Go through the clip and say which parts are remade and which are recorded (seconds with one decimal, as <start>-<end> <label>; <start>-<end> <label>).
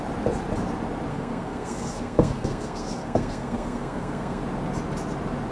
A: 0.0-1.1 recorded; 1.1-4.4 remade; 4.4-5.5 recorded